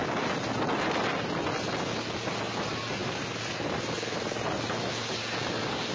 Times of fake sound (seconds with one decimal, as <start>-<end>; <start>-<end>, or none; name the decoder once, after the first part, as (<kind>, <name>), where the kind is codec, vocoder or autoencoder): none